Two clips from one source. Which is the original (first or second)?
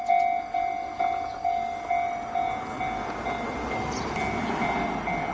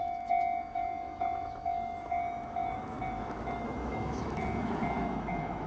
first